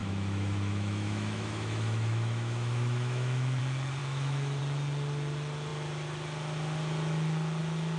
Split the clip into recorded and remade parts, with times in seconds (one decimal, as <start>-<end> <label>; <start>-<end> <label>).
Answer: 0.0-3.6 remade; 3.6-4.0 recorded; 4.0-4.6 remade; 4.6-8.0 recorded